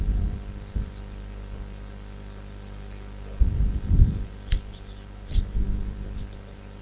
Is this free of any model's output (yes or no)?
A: no